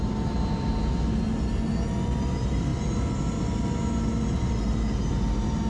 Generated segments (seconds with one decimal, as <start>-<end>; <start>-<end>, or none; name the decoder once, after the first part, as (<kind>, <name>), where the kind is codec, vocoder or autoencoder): none